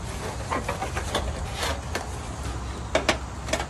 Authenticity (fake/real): real